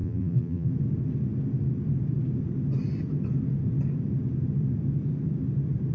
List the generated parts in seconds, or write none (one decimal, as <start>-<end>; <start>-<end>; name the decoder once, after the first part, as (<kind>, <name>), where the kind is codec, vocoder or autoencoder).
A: 0.0-0.7 (vocoder, BigVGAN v2)